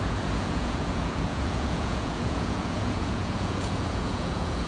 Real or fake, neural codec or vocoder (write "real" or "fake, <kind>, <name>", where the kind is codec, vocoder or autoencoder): fake, vocoder, Vocos